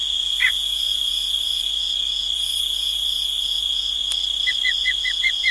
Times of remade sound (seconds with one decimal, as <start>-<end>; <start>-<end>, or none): 0.0-4.0; 4.5-5.5